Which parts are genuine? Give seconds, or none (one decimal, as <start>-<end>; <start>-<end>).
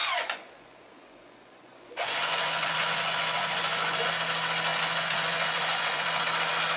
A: 4.1-4.7; 6.2-6.8